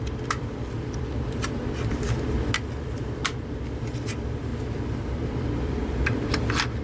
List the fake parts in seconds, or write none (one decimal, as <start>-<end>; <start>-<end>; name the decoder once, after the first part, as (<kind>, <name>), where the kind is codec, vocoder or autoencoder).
none